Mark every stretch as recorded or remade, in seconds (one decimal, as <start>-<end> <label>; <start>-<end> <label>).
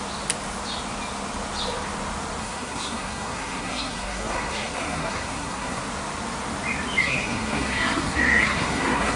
0.0-2.4 recorded; 2.4-5.8 remade; 5.8-7.0 recorded; 7.0-9.2 remade